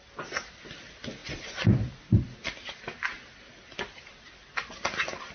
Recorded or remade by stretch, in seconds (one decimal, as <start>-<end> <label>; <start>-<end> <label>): 0.0-5.3 recorded